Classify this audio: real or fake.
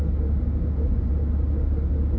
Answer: real